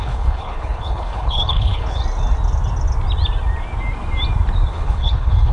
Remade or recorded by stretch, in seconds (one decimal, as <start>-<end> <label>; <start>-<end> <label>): 0.0-2.0 remade; 2.0-4.7 recorded; 4.7-5.5 remade